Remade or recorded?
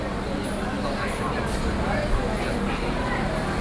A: recorded